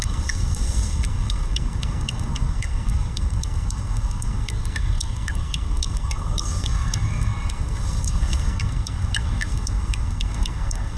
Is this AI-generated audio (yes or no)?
yes